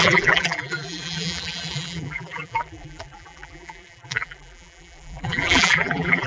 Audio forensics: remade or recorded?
remade